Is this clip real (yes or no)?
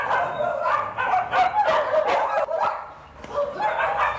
yes